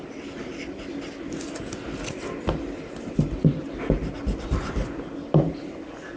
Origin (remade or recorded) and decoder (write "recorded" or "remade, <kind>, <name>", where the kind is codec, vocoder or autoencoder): recorded